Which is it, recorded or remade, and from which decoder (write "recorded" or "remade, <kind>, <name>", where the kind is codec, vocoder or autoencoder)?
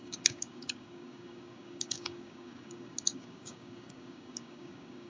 remade, codec, DAC